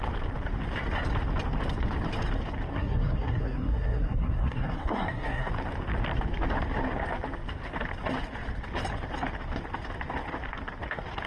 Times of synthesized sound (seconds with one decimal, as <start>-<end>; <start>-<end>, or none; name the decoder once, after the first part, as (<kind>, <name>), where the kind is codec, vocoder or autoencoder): 2.7-5.5 (codec, SNAC)